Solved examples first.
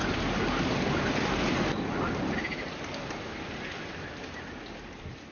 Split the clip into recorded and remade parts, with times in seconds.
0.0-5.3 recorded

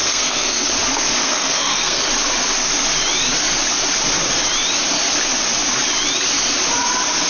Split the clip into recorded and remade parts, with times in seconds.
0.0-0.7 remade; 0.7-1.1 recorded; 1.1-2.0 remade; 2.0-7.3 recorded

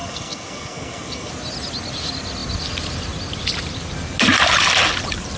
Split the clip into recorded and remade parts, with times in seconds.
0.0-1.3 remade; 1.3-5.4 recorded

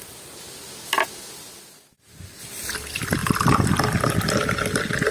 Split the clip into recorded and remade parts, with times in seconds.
0.0-5.1 recorded

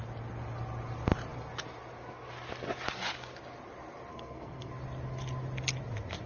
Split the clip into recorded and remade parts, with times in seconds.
0.0-4.1 recorded; 4.1-4.7 remade; 4.7-6.3 recorded

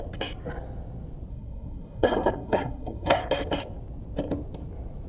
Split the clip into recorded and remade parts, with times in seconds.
0.0-1.3 recorded; 1.3-3.2 remade; 3.2-5.1 recorded